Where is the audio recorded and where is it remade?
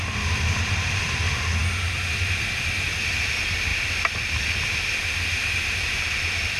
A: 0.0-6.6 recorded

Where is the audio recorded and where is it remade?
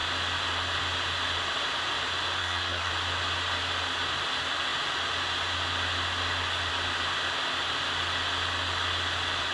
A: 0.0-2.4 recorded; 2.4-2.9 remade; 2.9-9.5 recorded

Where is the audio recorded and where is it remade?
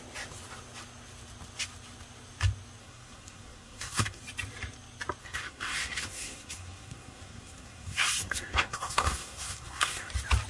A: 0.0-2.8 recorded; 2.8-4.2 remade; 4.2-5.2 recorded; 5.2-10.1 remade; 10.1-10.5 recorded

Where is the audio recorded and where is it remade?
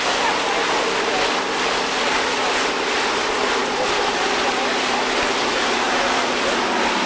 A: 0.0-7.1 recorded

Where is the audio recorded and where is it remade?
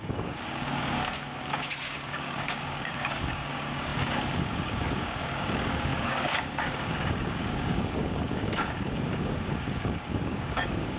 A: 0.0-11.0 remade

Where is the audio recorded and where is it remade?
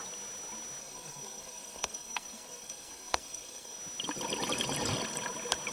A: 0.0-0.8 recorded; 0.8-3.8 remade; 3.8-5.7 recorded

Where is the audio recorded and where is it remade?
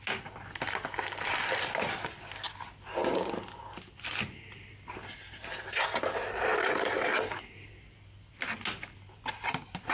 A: 0.0-9.9 recorded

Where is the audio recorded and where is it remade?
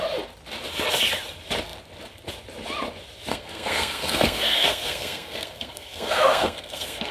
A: 0.0-3.3 recorded; 3.3-7.1 remade